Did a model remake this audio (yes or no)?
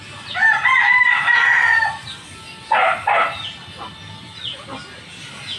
no